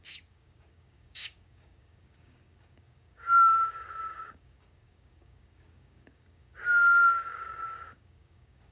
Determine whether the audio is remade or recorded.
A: remade